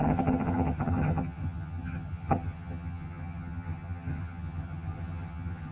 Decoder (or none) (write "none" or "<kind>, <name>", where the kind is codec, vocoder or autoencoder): vocoder, HiFi-GAN